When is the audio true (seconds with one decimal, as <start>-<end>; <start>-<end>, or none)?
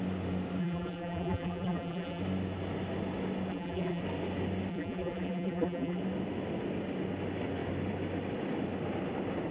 0.0-0.6; 2.2-3.5; 4.0-4.7; 6.0-9.5